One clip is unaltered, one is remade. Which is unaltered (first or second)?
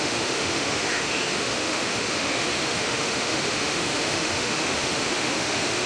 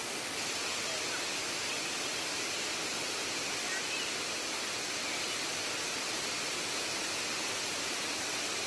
second